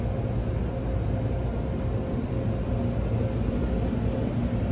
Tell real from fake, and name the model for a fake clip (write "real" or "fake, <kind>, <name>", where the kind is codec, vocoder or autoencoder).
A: real